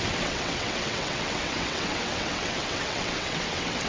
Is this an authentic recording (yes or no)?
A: no